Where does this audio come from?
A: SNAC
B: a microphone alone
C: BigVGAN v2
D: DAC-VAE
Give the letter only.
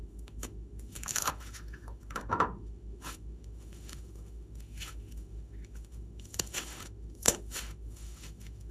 D